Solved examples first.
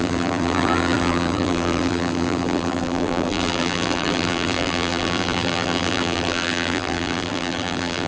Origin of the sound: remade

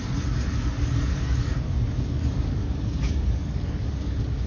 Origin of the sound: remade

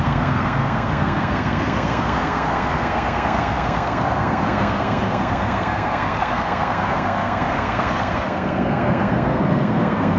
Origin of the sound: remade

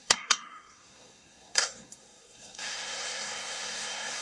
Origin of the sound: remade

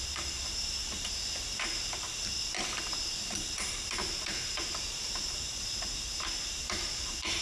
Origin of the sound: remade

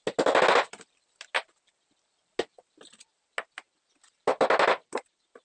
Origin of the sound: recorded